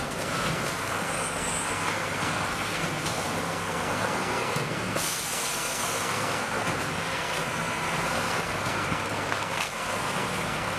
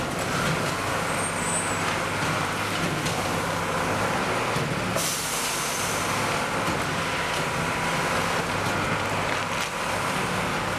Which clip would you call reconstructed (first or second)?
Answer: first